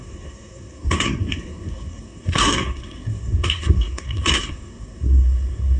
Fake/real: fake